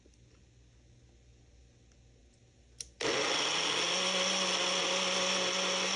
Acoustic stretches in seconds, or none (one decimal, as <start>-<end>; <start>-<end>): 0.0-6.0